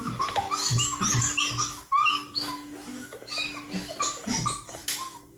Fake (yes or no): yes